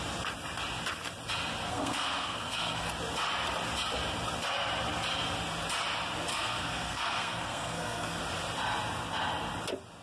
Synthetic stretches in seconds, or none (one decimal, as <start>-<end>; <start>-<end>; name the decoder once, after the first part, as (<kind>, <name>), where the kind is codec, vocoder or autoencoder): 1.7-2.9 (codec, SNAC); 6.3-8.2